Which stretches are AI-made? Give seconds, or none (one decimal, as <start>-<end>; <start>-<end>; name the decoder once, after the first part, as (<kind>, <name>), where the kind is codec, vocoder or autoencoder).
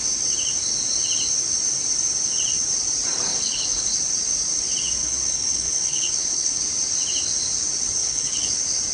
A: 3.3-3.9 (codec, HILCodec); 5.0-6.6; 8.0-8.5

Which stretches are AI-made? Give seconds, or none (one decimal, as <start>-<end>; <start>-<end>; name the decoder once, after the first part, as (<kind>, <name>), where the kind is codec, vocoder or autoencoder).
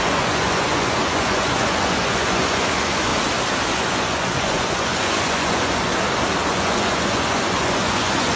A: 0.0-3.1 (vocoder, Vocos); 3.7-5.9; 6.5-8.4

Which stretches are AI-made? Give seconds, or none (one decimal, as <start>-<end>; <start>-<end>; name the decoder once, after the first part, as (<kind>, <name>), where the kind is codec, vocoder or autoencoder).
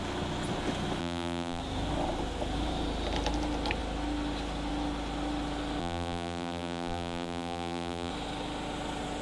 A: 1.0-1.6 (vocoder, BigVGAN v2); 5.8-8.1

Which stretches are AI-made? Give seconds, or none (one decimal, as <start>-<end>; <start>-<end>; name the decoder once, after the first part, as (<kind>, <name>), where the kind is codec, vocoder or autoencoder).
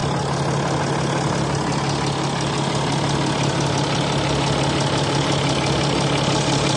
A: none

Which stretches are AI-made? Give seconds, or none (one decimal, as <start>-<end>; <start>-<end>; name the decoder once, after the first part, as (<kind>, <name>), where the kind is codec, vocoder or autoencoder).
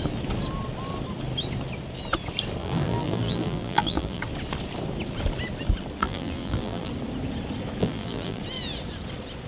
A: 2.6-4.2 (vocoder, BigVGAN v2); 6.0-6.9; 7.8-8.4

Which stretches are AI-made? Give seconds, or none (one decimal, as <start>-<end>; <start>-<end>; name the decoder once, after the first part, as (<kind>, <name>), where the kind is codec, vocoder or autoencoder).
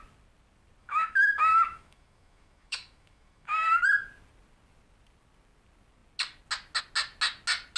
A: 0.8-3.8 (autoencoder, DAC-VAE)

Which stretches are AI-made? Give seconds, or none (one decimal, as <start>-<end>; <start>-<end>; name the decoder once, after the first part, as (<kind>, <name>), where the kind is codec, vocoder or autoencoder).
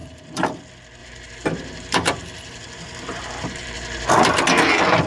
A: 0.0-0.6 (vocoder, BigVGAN v2); 1.0-4.1